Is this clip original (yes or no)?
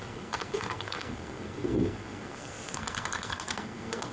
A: no